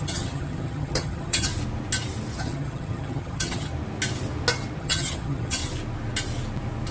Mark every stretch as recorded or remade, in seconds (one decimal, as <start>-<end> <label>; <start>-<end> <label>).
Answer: 0.0-1.5 remade; 1.5-2.4 recorded; 2.4-3.7 remade; 3.7-4.8 recorded; 4.8-5.6 remade; 5.6-6.9 recorded